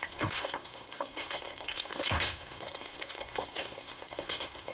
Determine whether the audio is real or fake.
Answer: fake